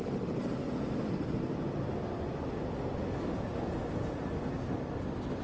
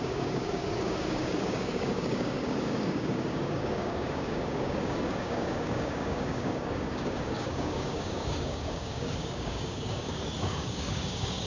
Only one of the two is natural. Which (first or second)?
first